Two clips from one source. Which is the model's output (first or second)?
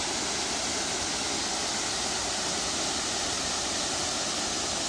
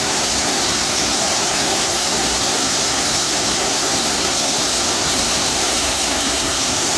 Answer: second